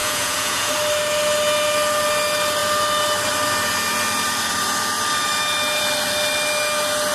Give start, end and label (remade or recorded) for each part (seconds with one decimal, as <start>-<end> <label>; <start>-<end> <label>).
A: 0.0-0.7 remade; 0.7-7.1 recorded